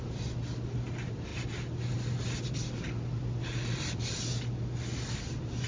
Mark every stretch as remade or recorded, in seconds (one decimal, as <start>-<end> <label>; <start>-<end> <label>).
0.0-5.7 recorded

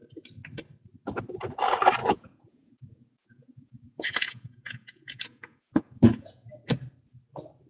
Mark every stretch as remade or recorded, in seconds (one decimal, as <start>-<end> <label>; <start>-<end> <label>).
0.0-2.0 recorded; 2.0-6.5 remade; 6.5-7.7 recorded